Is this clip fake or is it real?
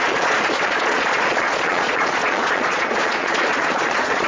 fake